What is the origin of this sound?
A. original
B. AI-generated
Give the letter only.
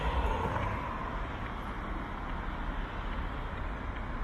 A